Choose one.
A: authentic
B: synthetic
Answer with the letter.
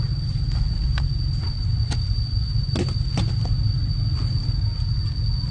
A